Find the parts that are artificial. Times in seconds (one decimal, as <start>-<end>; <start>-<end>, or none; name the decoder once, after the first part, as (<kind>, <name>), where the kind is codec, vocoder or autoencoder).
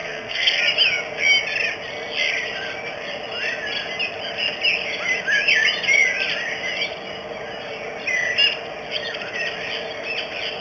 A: 0.0-0.6 (codec, SNAC)